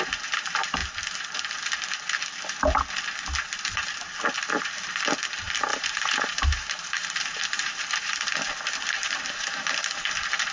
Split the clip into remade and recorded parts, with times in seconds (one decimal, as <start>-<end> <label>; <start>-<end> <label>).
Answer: 0.0-5.7 recorded; 5.7-8.2 remade; 8.2-9.0 recorded; 9.0-10.1 remade; 10.1-10.5 recorded